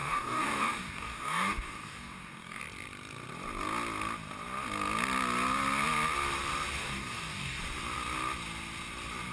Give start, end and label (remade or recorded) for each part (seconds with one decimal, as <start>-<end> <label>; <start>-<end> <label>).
0.0-2.6 remade; 2.6-6.8 recorded; 6.8-7.6 remade; 7.6-9.3 recorded